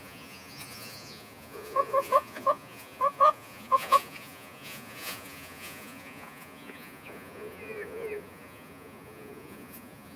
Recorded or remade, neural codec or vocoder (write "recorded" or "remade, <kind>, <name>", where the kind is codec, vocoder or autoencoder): remade, vocoder, Vocos